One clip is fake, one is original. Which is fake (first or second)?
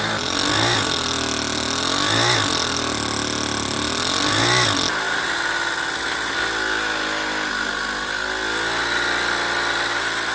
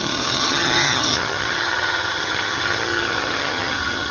second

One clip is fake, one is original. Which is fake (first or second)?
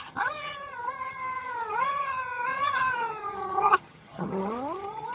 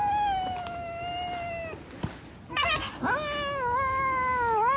first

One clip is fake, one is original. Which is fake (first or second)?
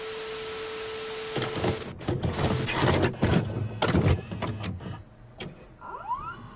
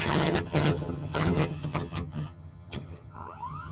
second